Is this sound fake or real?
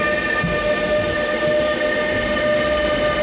real